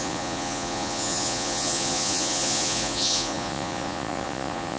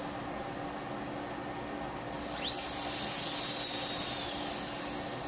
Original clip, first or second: second